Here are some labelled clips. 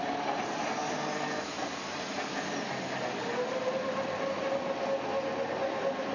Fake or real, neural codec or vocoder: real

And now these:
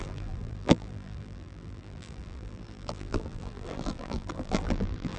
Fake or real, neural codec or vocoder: fake, vocoder, BigVGAN v2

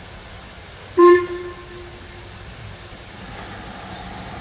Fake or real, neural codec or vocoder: real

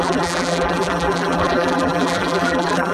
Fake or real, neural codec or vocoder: fake, vocoder, BigVGAN v2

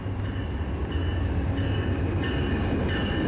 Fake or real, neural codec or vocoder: real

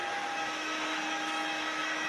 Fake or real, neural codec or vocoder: fake, autoencoder, DAC-VAE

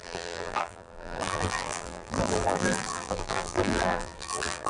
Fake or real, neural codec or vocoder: fake, vocoder, BigVGAN v2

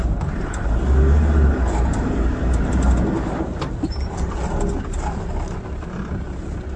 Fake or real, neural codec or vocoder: real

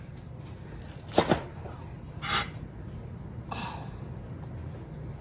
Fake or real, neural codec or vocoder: real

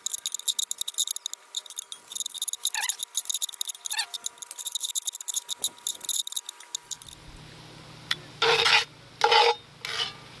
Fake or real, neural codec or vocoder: real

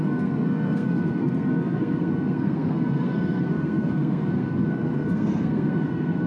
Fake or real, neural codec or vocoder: fake, codec, SNAC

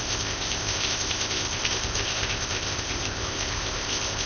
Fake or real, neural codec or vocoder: fake, codec, ZipCodec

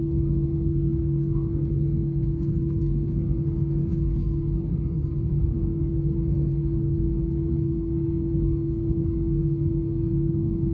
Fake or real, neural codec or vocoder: fake, codec, SNAC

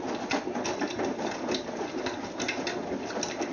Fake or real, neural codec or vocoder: real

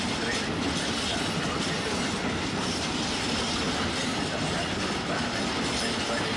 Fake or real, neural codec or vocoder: real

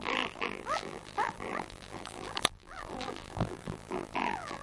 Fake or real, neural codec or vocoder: fake, vocoder, BigVGAN v2